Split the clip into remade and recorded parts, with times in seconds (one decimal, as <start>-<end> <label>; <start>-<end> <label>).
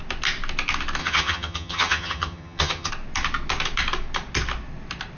0.0-1.0 recorded; 1.0-2.9 remade; 2.9-5.2 recorded